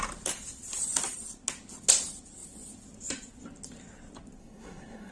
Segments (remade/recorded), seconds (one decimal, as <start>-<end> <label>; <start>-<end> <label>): 0.0-4.4 recorded; 4.4-5.1 remade